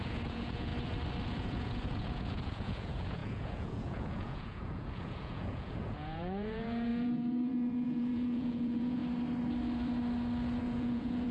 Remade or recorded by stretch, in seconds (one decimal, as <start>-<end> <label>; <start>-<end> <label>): 0.0-0.7 remade; 0.7-1.3 recorded; 1.3-9.0 remade; 9.0-10.6 recorded; 10.6-11.3 remade